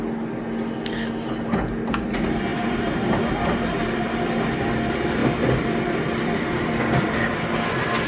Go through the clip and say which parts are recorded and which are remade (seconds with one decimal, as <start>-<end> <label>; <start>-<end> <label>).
0.0-2.5 recorded; 2.5-4.7 remade; 4.7-5.2 recorded; 5.2-7.4 remade; 7.4-8.1 recorded

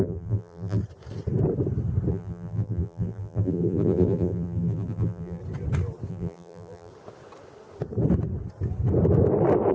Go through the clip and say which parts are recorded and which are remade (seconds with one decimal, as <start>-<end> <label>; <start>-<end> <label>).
0.0-0.8 remade; 0.8-2.1 recorded; 2.1-5.4 remade; 5.4-6.1 recorded; 6.1-6.9 remade; 6.9-9.7 recorded